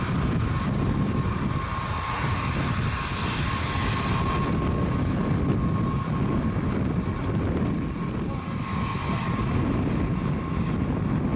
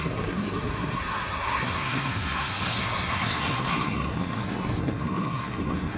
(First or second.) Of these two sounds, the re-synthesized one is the second